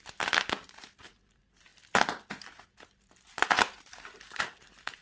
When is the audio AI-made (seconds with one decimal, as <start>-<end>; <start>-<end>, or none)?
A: none